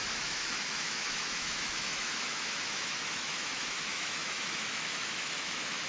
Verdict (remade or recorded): remade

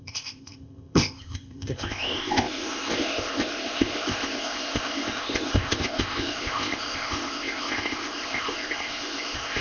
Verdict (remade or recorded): remade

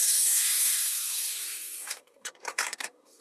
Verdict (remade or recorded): remade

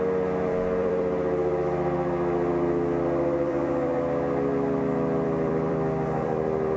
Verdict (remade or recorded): remade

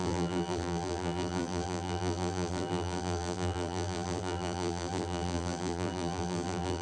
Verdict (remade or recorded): remade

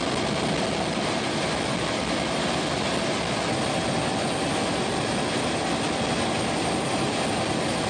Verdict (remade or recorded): recorded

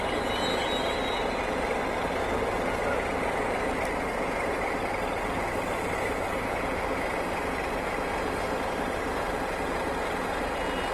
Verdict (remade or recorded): recorded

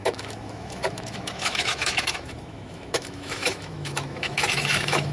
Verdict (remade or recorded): remade